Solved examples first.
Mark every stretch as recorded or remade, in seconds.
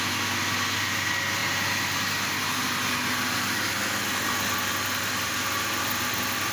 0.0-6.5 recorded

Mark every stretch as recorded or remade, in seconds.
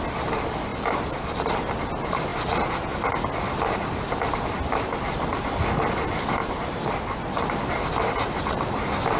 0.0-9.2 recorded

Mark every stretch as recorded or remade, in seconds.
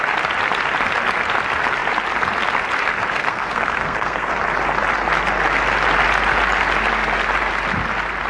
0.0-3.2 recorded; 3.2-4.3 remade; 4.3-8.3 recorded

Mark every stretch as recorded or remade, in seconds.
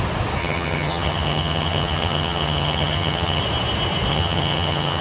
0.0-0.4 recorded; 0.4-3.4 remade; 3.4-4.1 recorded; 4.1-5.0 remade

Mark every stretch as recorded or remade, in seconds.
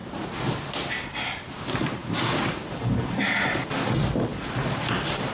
0.0-0.7 remade; 0.7-2.0 recorded; 2.0-3.9 remade; 3.9-4.3 recorded; 4.3-5.3 remade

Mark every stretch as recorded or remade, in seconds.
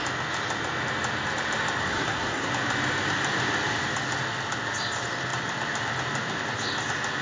0.0-1.8 recorded; 1.8-2.5 remade; 2.5-7.2 recorded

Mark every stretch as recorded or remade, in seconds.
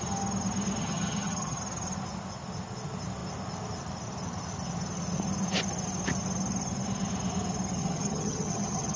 0.0-0.8 recorded; 0.8-1.6 remade; 1.6-7.8 recorded; 7.8-9.0 remade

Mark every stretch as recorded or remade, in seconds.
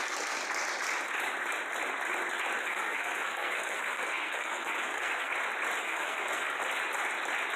0.0-0.4 remade; 0.4-2.6 recorded; 2.6-5.3 remade; 5.3-5.8 recorded; 5.8-6.6 remade; 6.6-7.6 recorded